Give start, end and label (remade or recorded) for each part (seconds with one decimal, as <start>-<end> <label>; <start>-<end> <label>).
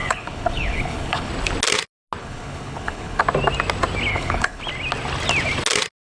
0.0-1.3 remade; 1.3-2.2 recorded; 2.2-3.2 remade; 3.2-4.1 recorded; 4.1-4.6 remade; 4.6-6.1 recorded